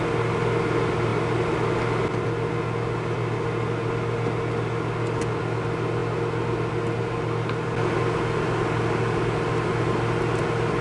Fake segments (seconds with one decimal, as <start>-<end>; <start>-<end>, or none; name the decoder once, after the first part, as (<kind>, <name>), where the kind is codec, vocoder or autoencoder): none